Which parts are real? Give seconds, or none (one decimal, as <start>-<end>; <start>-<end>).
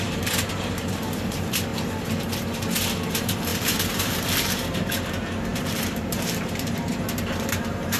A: 1.7-3.1